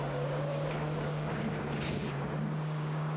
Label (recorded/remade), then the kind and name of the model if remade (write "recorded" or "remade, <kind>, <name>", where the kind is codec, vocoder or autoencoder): remade, codec, DAC